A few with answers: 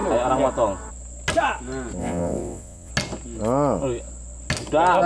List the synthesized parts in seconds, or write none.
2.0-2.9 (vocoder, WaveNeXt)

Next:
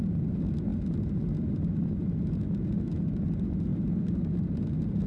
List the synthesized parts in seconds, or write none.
none

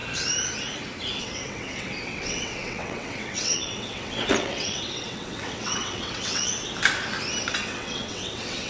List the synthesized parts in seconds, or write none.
1.1-6.5 (vocoder, WaveNeXt); 7.5-8.7

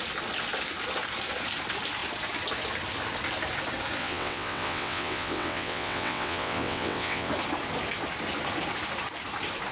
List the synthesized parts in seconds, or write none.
4.0-7.3 (vocoder, WaveNeXt)

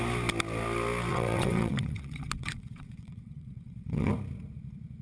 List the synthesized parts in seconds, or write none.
1.1-4.1 (vocoder, WaveNeXt)

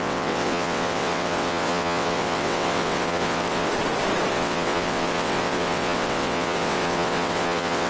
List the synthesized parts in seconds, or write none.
0.0-3.7 (vocoder, WaveNeXt); 4.3-7.9